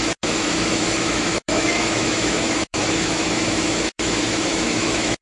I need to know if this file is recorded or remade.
remade